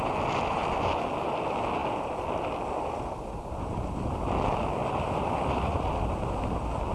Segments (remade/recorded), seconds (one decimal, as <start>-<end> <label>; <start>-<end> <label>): 0.0-6.9 recorded